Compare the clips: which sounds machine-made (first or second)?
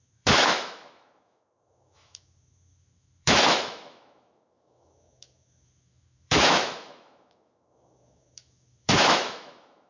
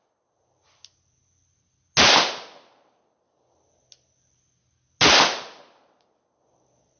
first